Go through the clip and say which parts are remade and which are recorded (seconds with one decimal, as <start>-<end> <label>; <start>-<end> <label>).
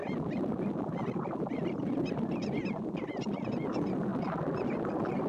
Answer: 0.0-5.3 recorded